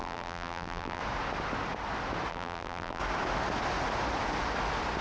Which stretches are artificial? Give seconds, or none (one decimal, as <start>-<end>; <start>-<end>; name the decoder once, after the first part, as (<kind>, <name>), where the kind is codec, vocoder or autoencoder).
0.0-1.0 (vocoder, BigVGAN v2); 2.3-3.0